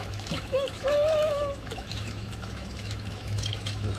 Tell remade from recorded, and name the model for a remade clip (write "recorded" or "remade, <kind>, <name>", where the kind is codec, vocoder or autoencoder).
remade, autoencoder, DAC-VAE